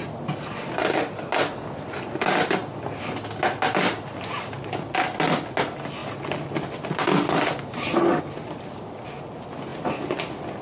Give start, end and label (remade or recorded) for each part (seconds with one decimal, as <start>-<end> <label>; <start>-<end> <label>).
0.0-10.6 recorded